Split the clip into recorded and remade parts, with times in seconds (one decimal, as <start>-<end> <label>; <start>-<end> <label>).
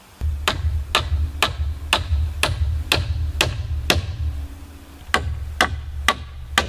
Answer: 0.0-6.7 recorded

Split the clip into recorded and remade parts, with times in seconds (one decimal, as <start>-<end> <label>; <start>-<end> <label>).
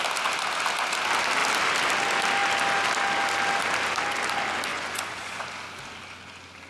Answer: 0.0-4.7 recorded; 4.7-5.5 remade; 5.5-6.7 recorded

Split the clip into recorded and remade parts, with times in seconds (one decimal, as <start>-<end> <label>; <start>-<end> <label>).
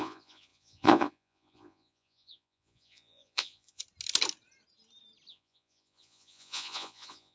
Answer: 0.0-3.8 remade; 3.8-5.3 recorded; 5.3-7.3 remade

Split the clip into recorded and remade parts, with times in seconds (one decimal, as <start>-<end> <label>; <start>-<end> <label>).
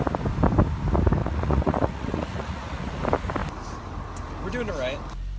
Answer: 0.0-1.2 recorded; 1.2-3.0 remade; 3.0-5.4 recorded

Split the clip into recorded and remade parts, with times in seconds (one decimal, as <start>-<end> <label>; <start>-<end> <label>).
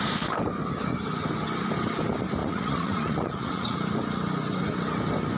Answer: 0.0-2.4 recorded; 2.4-3.8 remade; 3.8-5.4 recorded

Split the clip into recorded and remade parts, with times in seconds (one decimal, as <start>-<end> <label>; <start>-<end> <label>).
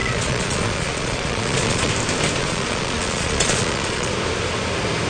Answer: 0.0-1.9 remade; 1.9-2.4 recorded; 2.4-4.1 remade; 4.1-5.1 recorded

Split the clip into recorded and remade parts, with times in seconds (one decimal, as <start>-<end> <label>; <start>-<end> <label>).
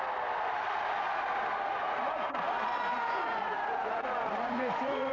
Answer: 0.0-1.8 recorded; 1.8-5.1 remade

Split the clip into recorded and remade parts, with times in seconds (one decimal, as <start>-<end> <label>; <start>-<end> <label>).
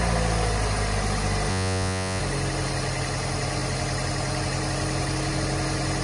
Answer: 0.0-1.5 recorded; 1.5-2.2 remade; 2.2-6.0 recorded